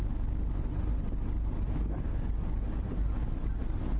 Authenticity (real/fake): real